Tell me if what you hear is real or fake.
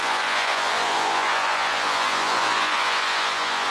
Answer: fake